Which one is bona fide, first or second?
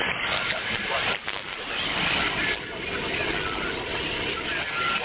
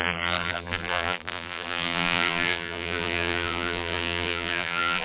first